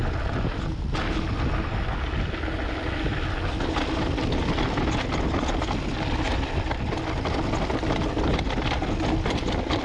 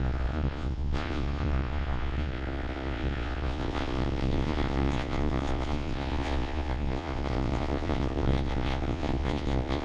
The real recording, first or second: first